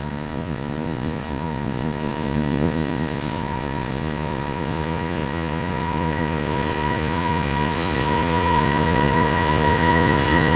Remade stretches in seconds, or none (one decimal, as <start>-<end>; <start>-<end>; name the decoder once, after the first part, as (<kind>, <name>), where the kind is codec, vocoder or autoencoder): 0.0-10.6 (vocoder, Vocos)